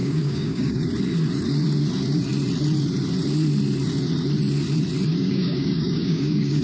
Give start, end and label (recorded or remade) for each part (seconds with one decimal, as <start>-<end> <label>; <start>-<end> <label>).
0.0-0.9 remade; 0.9-5.1 recorded; 5.1-6.6 remade